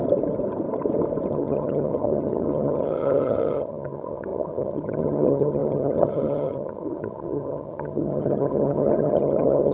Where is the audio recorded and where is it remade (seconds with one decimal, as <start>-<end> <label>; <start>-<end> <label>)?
0.0-1.3 recorded; 1.3-9.7 remade